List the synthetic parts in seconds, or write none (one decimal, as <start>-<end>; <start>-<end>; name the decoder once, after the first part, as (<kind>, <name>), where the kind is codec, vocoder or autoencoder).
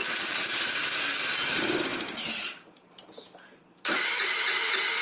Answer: 0.0-1.2 (vocoder, BigVGAN v2); 1.9-4.5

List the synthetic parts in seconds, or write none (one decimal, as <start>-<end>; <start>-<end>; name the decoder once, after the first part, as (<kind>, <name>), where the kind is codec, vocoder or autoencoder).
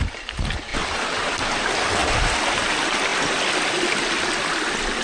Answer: 2.0-2.7 (vocoder, BigVGAN v2)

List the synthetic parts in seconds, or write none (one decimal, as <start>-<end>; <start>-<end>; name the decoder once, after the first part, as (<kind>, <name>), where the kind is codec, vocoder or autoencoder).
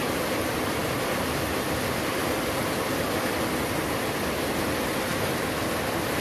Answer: 0.8-3.8 (vocoder, BigVGAN v2)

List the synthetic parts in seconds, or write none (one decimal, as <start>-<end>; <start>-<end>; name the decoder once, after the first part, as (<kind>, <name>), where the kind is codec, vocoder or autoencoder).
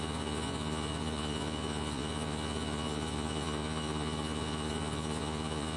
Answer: 0.0-5.8 (vocoder, Vocos)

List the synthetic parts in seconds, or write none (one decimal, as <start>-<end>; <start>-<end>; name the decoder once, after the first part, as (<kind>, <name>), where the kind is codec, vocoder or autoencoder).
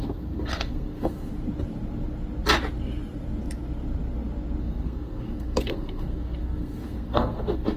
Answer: 0.0-1.3 (codec, SNAC); 4.6-7.8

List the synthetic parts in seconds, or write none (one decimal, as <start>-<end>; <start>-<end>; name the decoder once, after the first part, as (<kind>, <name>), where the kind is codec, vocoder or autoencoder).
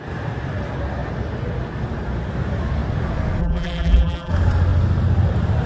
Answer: 3.4-4.3 (vocoder, BigVGAN v2)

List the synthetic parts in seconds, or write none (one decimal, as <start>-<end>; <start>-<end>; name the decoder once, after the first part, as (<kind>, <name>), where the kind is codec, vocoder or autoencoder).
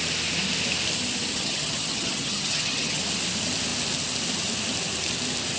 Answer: 1.3-3.0 (vocoder, HiFi-GAN)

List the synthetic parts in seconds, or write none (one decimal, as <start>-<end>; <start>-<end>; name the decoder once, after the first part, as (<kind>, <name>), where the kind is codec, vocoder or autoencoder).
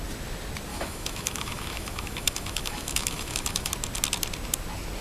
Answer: 0.7-3.7 (autoencoder, DAC-VAE)